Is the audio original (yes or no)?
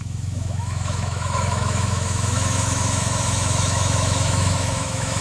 no